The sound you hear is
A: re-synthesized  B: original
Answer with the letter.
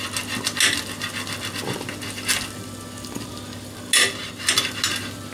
B